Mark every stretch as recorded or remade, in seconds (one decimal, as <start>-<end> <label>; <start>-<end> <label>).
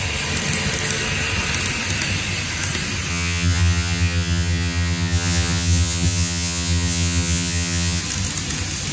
0.0-3.1 recorded; 3.1-8.0 remade; 8.0-8.9 recorded